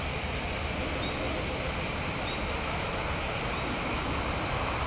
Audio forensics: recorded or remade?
recorded